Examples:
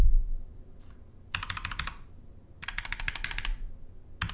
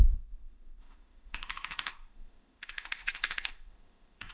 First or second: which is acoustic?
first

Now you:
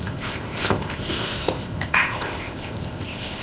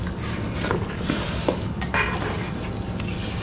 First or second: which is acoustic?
second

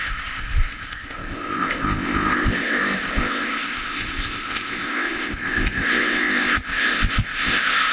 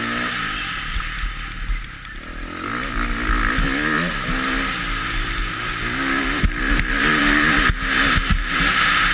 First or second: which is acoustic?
second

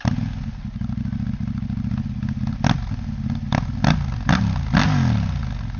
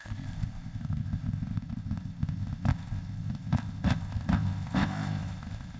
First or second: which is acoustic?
first